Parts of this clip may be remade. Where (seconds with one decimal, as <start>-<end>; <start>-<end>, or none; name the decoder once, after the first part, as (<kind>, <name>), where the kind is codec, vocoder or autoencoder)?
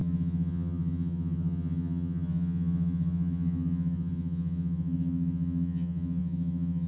0.0-6.9 (vocoder, HiFi-GAN)